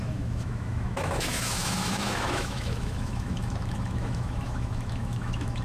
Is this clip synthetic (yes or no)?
yes